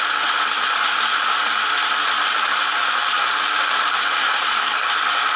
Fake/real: real